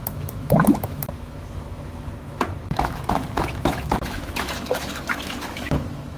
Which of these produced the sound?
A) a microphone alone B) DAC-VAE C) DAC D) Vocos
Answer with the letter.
B